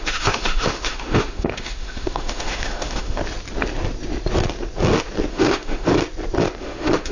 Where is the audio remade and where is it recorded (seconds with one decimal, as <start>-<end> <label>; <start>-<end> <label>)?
0.0-3.2 remade; 3.2-5.3 recorded; 5.3-5.9 remade; 5.9-6.6 recorded; 6.6-7.1 remade